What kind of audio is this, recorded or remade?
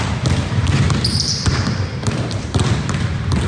remade